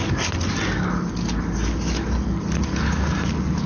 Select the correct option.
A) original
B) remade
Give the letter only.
A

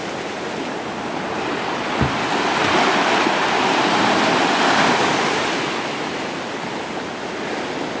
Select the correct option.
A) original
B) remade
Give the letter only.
A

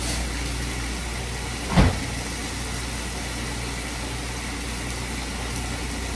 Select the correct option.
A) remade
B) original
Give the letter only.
B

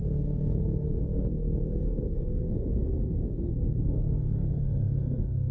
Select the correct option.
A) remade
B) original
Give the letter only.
A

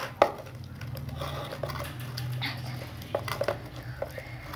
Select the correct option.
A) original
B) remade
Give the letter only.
A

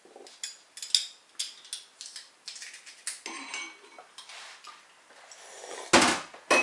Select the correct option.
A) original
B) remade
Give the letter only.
A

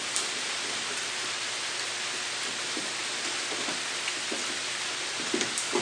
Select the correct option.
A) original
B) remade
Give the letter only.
A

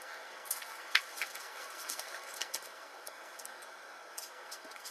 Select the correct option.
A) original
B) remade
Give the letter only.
B